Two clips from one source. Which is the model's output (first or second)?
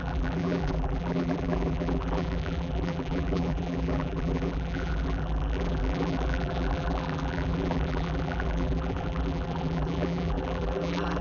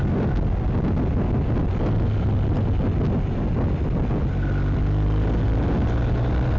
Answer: first